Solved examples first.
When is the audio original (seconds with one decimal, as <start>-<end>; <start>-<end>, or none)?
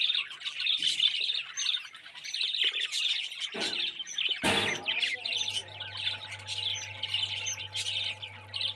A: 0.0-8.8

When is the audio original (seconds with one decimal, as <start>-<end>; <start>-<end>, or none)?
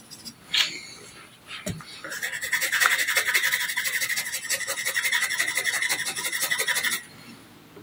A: 0.0-7.8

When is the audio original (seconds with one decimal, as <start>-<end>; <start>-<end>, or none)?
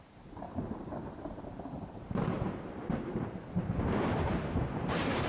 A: none